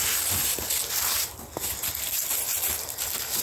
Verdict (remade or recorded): recorded